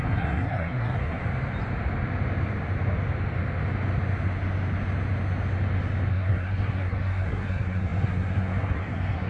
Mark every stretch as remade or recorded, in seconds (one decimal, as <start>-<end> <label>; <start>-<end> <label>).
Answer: 0.0-1.2 remade; 1.2-6.1 recorded; 6.1-9.3 remade